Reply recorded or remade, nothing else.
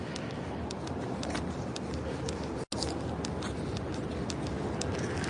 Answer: recorded